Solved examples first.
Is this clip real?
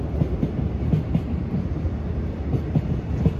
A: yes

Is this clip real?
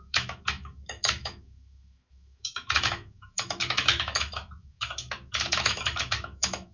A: no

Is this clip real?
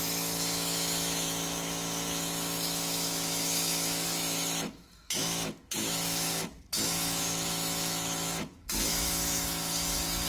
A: no